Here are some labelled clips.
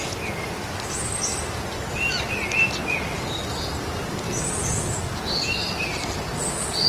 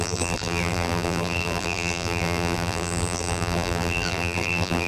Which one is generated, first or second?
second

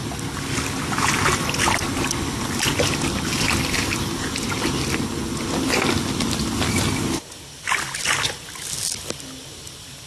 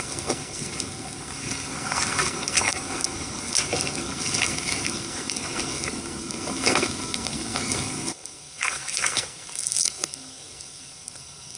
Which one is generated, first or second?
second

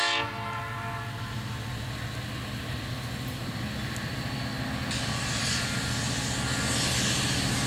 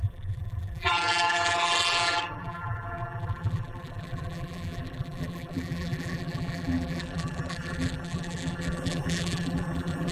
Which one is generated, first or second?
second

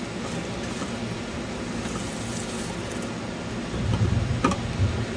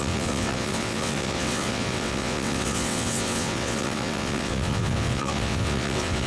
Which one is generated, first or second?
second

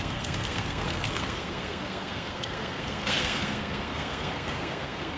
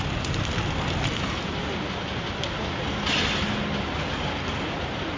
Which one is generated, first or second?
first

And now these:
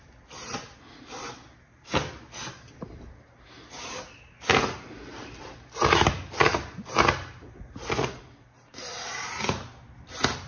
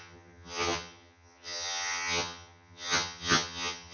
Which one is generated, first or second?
second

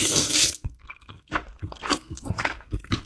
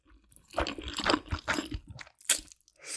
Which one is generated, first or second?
first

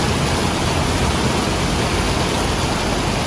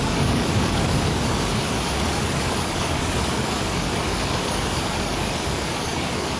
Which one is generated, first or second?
second